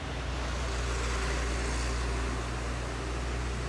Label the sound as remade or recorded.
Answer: recorded